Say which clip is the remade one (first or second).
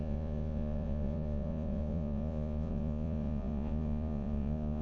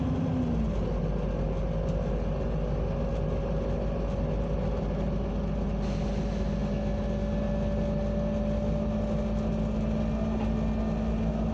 first